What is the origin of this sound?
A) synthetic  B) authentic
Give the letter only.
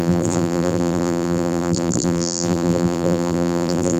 A